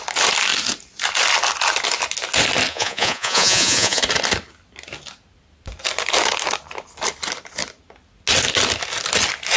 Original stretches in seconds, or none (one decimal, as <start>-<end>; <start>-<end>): 0.0-2.7; 4.0-9.6